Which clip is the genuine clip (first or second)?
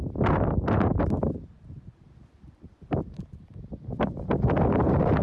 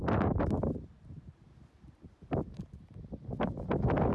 second